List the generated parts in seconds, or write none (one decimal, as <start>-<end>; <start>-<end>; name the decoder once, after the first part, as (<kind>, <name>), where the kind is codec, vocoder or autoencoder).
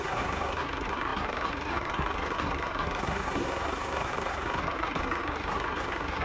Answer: 0.0-6.2 (codec, SNAC)